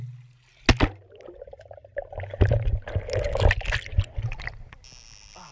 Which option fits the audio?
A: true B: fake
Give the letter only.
A